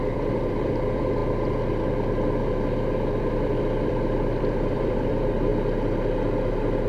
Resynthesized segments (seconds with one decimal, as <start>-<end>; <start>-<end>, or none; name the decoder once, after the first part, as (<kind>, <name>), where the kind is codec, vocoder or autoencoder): 0.0-1.2 (vocoder, BigVGAN v2); 3.2-5.5